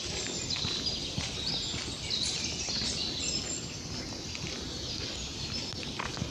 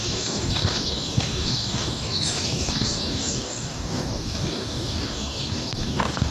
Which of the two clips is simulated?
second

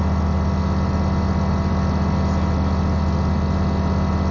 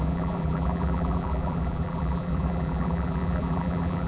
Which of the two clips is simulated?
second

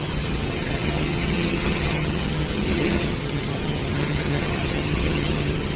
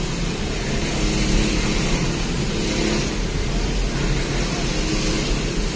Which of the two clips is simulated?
first